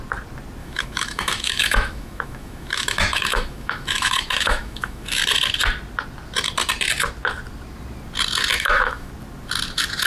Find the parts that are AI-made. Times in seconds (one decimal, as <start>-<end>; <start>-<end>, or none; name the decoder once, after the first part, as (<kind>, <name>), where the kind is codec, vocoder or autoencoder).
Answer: 0.6-5.2 (autoencoder, DAC-VAE); 8.5-9.1